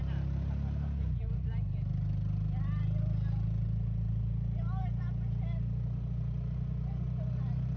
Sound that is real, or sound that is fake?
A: real